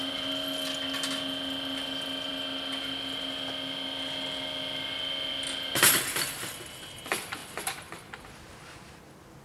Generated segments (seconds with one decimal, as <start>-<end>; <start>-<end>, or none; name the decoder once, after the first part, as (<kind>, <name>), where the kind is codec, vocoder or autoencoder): none